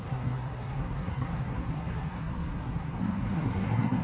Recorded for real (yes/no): no